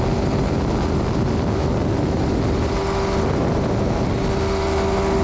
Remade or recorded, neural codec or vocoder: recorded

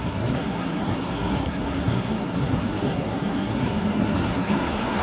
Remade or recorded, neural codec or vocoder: remade, codec, SNAC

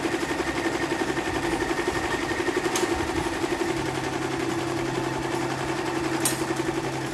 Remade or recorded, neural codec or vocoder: recorded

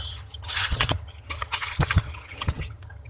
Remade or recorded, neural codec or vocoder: remade, vocoder, HiFi-GAN